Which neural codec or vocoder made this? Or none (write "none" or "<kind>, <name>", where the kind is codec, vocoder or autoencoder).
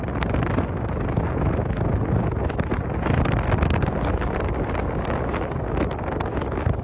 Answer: none